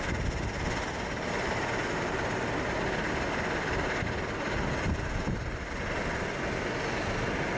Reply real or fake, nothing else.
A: real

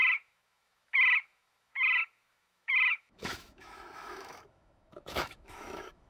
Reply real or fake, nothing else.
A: fake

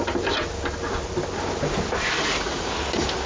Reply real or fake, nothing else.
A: real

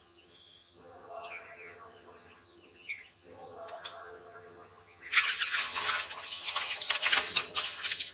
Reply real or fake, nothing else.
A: fake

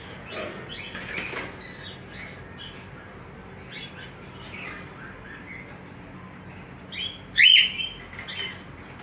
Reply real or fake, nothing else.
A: real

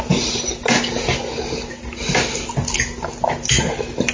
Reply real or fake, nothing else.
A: real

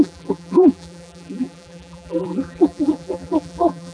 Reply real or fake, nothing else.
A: fake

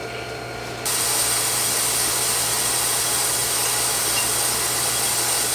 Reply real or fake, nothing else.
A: real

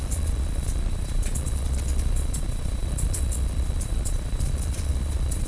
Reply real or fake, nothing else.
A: fake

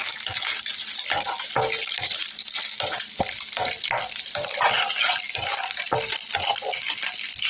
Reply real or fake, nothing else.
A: real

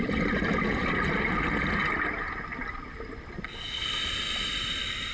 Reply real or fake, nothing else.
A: real